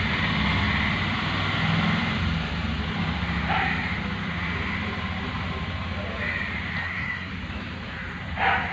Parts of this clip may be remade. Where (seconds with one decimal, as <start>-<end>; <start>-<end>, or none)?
6.8-7.3